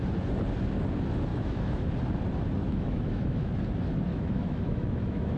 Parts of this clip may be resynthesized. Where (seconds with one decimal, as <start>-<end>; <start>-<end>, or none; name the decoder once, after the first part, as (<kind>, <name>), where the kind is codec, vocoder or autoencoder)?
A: 1.3-1.9 (autoencoder, DAC-VAE); 2.6-3.5; 4.1-5.4